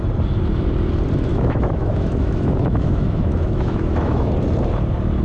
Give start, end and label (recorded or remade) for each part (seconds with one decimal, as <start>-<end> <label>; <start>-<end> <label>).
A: 0.0-1.3 recorded; 1.3-4.3 remade; 4.3-5.2 recorded